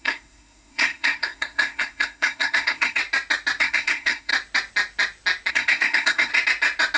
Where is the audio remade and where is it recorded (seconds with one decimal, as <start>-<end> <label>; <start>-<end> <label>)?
0.0-3.0 remade; 3.0-3.6 recorded; 3.6-4.3 remade; 4.3-5.5 recorded; 5.5-6.3 remade; 6.3-7.0 recorded